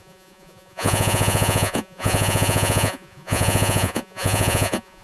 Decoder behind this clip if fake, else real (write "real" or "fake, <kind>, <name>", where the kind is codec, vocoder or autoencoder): fake, vocoder, Vocos